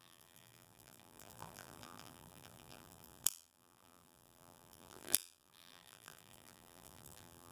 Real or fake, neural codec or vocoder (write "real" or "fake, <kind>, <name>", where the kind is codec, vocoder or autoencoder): fake, vocoder, BigVGAN v2